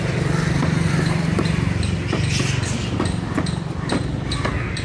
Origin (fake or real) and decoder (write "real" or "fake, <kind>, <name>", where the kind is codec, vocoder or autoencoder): fake, vocoder, BigVGAN v2